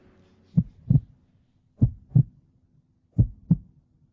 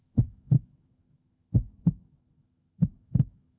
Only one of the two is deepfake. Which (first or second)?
second